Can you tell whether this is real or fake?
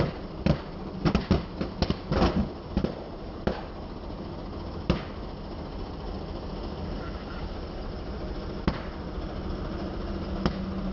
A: real